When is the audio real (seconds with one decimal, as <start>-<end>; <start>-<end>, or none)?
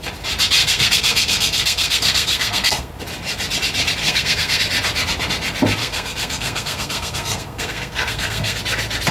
0.0-0.6; 2.9-4.0; 4.6-5.8; 8.6-9.1